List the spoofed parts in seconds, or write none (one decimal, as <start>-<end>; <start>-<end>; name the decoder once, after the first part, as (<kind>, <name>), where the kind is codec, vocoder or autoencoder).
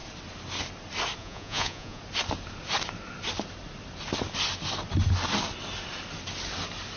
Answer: 1.2-2.0 (vocoder, Vocos)